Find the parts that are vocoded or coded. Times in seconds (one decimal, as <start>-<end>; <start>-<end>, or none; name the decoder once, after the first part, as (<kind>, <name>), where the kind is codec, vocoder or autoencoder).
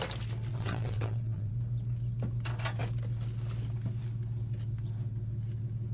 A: 0.5-1.5 (vocoder, WaveNeXt)